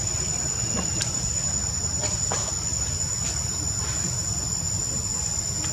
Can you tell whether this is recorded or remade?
recorded